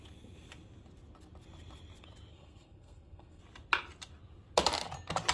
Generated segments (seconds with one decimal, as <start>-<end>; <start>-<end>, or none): 2.3-3.4